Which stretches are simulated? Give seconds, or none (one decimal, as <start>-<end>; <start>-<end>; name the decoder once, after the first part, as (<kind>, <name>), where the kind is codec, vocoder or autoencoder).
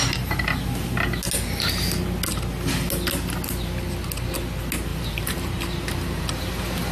4.9-6.3 (vocoder, BigVGAN v2)